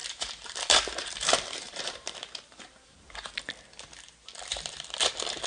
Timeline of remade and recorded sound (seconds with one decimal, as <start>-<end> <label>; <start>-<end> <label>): 0.0-3.3 remade; 3.3-4.5 recorded; 4.5-5.1 remade; 5.1-5.5 recorded